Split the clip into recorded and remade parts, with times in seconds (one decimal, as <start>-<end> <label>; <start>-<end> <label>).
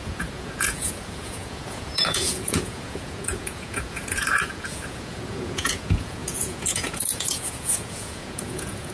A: 0.0-8.9 remade